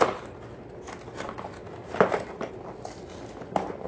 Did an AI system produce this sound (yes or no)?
no